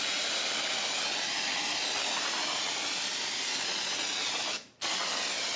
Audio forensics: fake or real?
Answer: real